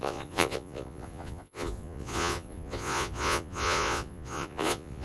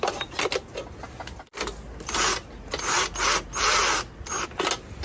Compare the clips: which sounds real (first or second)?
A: second